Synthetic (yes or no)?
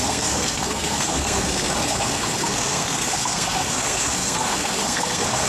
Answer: yes